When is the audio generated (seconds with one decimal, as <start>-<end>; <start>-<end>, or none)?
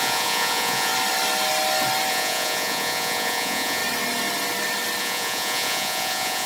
0.0-0.9; 2.1-3.8; 5.0-6.5